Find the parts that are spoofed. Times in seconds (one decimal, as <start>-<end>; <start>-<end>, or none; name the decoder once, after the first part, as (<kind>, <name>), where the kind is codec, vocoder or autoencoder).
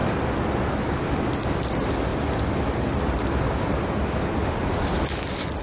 none